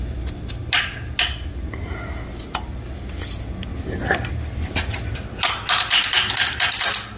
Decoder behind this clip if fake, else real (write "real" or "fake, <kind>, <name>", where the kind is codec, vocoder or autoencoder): real